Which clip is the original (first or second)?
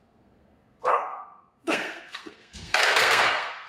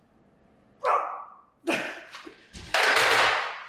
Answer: second